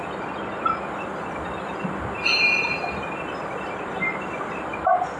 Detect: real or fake real